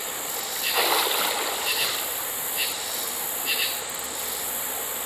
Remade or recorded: recorded